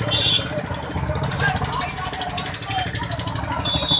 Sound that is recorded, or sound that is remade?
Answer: recorded